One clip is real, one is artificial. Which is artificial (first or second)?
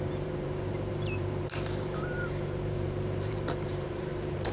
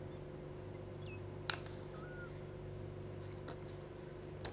first